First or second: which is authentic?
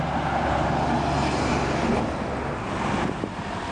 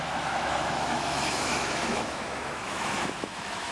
first